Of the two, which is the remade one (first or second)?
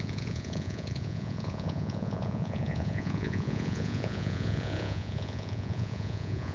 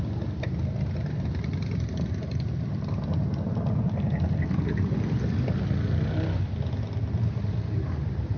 first